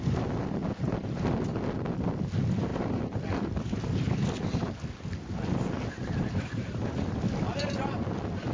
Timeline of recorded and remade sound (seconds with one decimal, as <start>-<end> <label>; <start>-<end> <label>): 0.0-2.7 recorded; 2.7-3.9 remade; 3.9-8.5 recorded